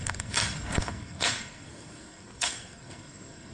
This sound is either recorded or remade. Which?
remade